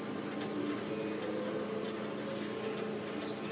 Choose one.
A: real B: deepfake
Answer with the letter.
A